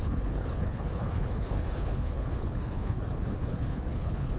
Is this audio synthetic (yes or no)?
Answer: yes